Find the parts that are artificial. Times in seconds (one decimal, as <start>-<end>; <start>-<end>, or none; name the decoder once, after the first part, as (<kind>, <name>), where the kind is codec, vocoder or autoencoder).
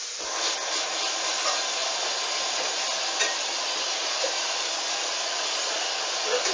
none